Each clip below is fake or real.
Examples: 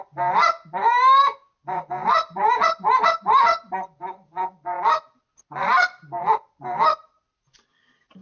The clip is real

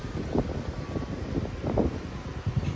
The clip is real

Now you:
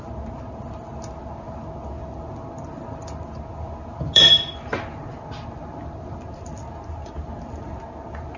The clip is real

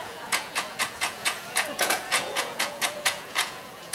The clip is fake